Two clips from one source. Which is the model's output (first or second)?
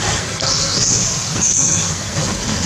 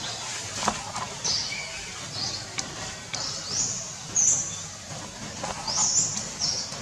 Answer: first